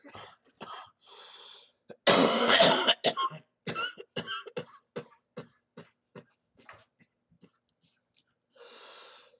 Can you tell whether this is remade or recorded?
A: recorded